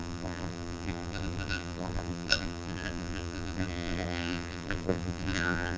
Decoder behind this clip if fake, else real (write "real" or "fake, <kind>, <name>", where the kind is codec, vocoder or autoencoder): fake, vocoder, BigVGAN v2